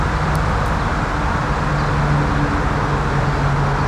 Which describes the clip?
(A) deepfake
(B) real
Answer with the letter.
B